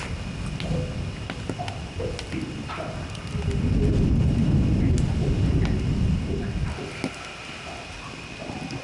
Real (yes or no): yes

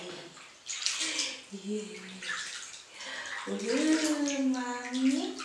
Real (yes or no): yes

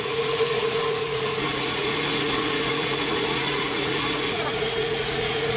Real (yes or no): no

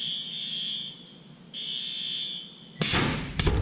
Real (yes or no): yes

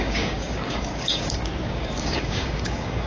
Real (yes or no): no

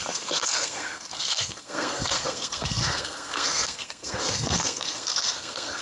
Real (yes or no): no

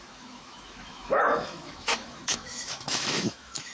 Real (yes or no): no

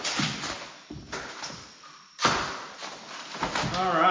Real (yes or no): yes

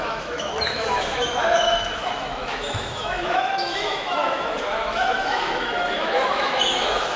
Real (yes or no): no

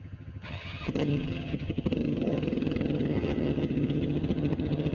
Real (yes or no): no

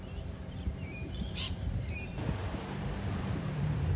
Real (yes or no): no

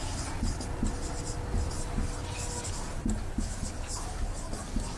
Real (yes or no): yes